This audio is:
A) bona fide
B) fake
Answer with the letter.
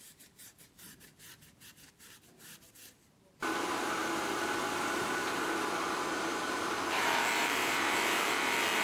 B